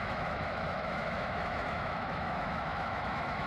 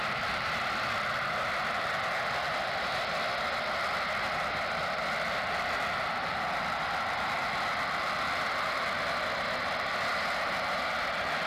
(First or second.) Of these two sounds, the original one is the second